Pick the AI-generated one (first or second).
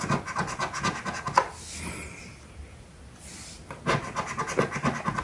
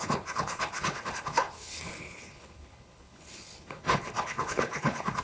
second